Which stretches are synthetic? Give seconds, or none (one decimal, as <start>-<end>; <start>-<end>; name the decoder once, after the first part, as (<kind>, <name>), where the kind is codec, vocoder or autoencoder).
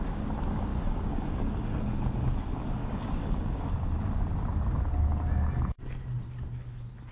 0.7-1.5 (codec, DAC); 2.8-3.7